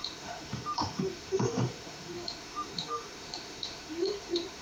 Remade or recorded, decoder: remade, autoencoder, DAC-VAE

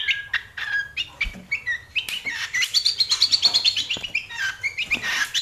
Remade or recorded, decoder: recorded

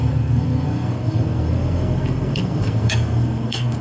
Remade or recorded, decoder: remade, codec, SNAC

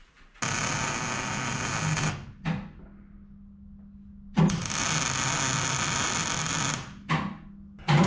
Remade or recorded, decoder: recorded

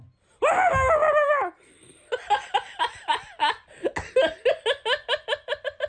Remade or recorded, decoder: recorded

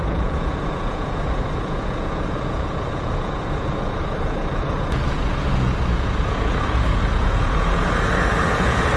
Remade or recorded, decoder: remade, vocoder, Vocos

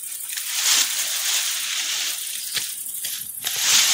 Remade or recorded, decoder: recorded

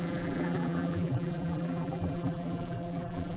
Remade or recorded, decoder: remade, vocoder, BigVGAN v2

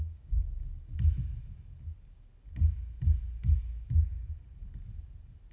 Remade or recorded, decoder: recorded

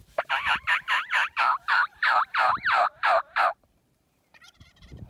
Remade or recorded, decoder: remade, vocoder, BigVGAN v2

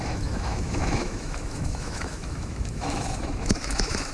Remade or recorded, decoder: remade, autoencoder, DAC-VAE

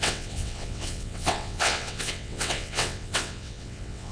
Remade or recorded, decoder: remade, vocoder, WaveNeXt